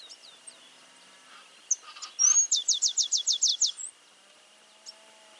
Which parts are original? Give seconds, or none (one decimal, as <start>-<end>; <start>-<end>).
0.0-5.4